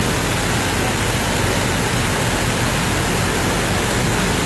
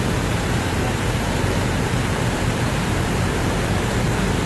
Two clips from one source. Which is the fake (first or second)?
second